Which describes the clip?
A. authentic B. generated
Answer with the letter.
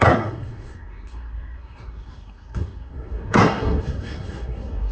B